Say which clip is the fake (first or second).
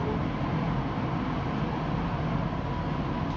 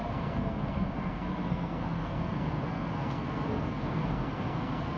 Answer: second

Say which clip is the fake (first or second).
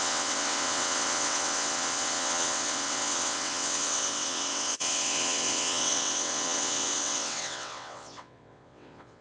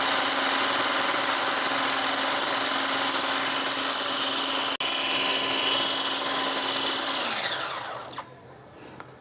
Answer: first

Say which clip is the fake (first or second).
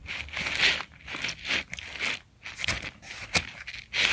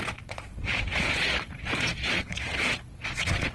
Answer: second